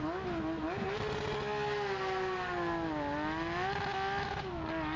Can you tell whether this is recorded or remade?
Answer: recorded